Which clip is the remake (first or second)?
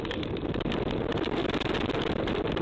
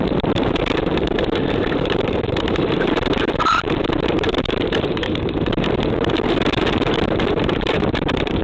second